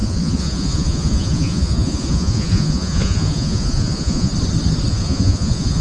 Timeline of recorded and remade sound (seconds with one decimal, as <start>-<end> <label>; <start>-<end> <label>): 0.0-4.3 remade; 4.3-4.9 recorded; 4.9-5.8 remade